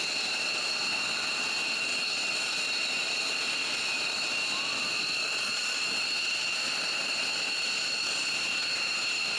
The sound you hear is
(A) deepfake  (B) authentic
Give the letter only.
B